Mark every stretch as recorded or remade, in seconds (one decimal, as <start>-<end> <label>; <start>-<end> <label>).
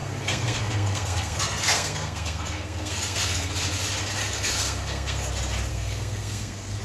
0.0-3.5 remade; 3.5-4.2 recorded; 4.2-5.3 remade; 5.3-5.7 recorded; 5.7-6.8 remade